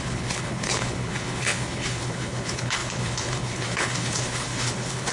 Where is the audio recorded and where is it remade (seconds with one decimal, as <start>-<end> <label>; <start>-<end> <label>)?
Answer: 0.0-5.1 remade